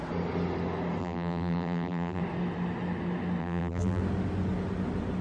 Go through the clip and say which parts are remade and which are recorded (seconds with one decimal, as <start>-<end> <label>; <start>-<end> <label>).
0.0-1.0 recorded; 1.0-2.2 remade; 2.2-3.4 recorded; 3.4-4.0 remade; 4.0-5.2 recorded